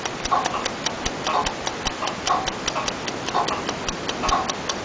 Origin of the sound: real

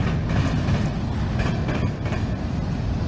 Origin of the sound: real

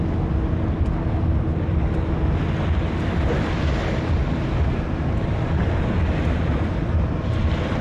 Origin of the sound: real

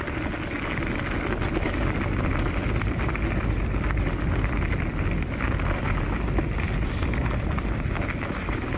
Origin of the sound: real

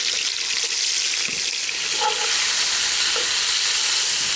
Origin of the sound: real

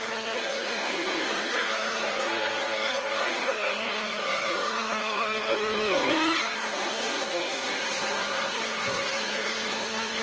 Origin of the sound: fake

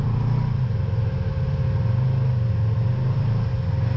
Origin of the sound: real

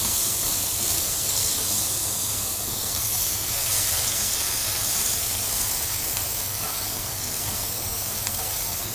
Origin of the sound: fake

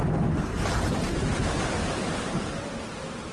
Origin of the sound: real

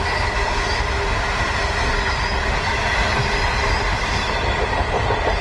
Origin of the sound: real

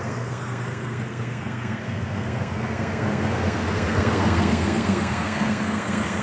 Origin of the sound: fake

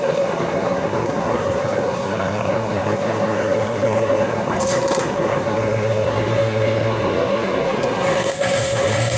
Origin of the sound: fake